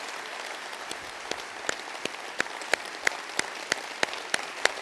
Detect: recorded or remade remade